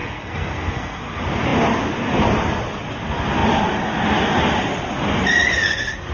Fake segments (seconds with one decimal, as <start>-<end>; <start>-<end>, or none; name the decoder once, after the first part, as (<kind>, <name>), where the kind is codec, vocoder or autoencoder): 0.0-1.0 (codec, SNAC)

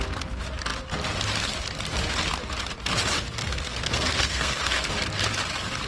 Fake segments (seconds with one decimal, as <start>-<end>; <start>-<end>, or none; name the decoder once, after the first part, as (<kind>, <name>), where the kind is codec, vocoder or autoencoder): 3.4-4.9 (codec, SNAC)

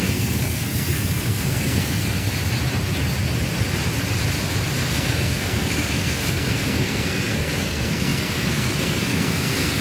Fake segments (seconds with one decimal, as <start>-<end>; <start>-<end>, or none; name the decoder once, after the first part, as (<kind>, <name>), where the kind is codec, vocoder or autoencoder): 0.0-2.3 (codec, SNAC); 4.9-9.8

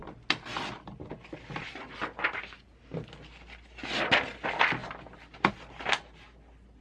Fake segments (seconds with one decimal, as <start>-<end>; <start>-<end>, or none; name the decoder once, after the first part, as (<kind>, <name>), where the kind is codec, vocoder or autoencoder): none